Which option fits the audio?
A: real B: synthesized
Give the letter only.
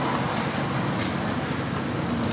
A